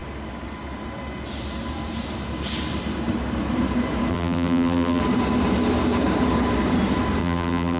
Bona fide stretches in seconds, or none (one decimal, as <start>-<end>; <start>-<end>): 0.0-4.1; 5.0-7.2